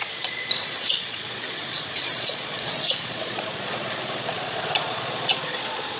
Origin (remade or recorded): remade